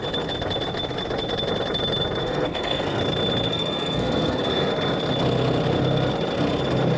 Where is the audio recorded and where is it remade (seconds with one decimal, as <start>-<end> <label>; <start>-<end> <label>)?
0.0-2.2 recorded; 2.2-3.0 remade; 3.0-3.5 recorded; 3.5-4.7 remade; 4.7-7.0 recorded